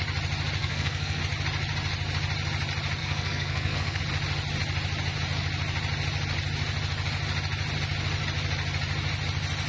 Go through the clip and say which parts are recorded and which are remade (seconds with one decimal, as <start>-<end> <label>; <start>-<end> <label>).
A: 0.0-0.6 recorded; 0.6-1.2 remade; 1.2-3.0 recorded; 3.0-4.0 remade; 4.0-9.7 recorded